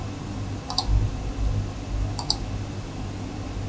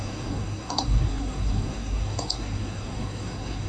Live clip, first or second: first